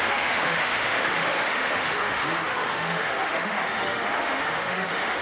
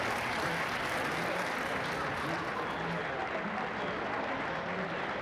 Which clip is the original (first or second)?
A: second